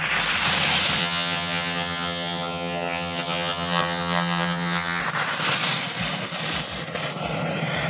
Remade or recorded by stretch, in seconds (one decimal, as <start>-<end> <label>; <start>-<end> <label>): 0.0-1.0 recorded; 1.0-5.0 remade; 5.0-7.9 recorded